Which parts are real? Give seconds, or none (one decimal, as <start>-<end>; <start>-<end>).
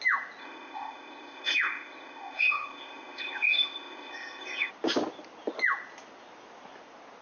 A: 0.0-0.4; 4.7-7.2